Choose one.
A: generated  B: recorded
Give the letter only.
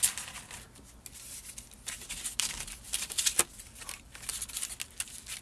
B